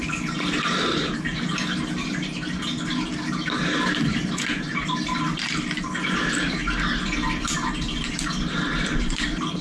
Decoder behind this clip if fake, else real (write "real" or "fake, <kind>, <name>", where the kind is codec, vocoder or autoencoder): fake, vocoder, BigVGAN v2